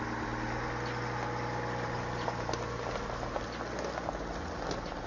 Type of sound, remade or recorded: recorded